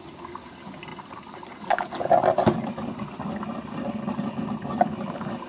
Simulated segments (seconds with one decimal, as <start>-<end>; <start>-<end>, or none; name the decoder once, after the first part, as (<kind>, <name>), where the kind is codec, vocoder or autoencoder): none